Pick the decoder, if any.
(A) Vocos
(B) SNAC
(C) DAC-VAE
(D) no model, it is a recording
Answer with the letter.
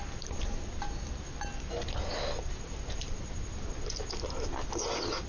D